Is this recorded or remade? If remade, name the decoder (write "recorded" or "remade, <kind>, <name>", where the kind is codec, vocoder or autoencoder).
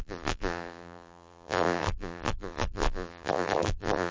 remade, vocoder, BigVGAN v2